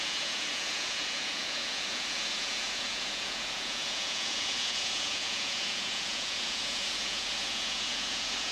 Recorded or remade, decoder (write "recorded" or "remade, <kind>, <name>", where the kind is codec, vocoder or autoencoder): remade, vocoder, Vocos